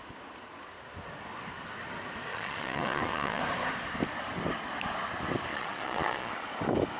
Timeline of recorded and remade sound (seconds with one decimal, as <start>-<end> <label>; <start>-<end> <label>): 0.0-2.3 recorded; 2.3-3.4 remade; 3.4-5.5 recorded; 5.5-6.5 remade; 6.5-7.0 recorded